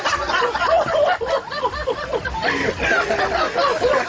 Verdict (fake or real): real